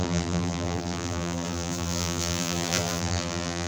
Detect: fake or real fake